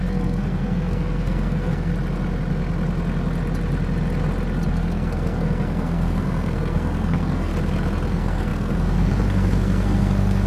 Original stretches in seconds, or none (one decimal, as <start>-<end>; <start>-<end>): 1.9-4.7; 7.5-8.1